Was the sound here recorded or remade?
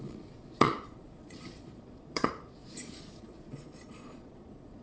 remade